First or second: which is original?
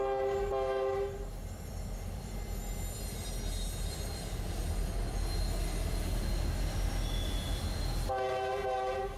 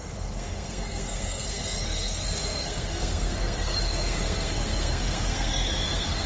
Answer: first